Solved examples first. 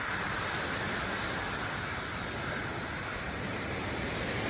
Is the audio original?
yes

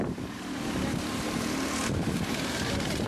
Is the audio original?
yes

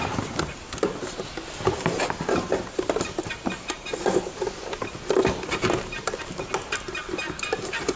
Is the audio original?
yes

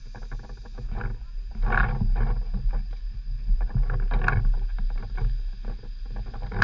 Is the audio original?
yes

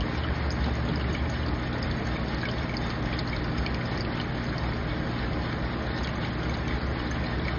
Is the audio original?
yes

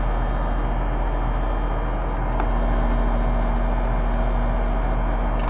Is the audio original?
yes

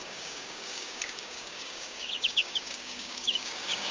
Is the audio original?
no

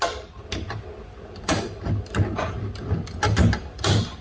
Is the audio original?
yes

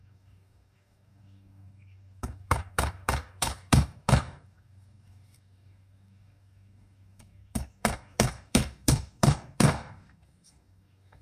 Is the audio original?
no